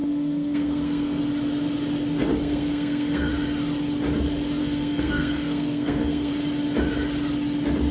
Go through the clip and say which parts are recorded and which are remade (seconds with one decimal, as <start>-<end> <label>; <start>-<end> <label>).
0.0-1.2 remade; 1.2-2.3 recorded; 2.3-3.3 remade; 3.3-4.6 recorded; 4.6-6.3 remade; 6.3-7.9 recorded